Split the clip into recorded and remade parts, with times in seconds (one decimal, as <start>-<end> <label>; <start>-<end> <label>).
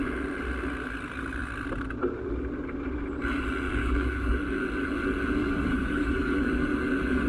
0.0-3.8 recorded; 3.8-4.4 remade; 4.4-5.4 recorded; 5.4-6.5 remade; 6.5-7.3 recorded